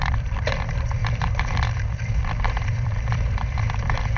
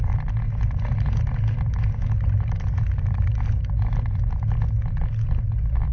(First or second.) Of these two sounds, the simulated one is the first